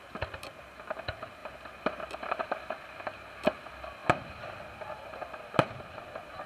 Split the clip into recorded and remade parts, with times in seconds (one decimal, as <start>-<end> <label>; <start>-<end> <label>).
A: 0.0-6.5 recorded